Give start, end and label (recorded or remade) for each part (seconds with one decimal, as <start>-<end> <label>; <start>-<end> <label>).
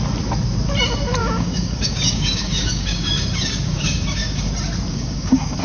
0.0-1.2 recorded; 1.2-4.5 remade; 4.5-4.9 recorded; 4.9-5.6 remade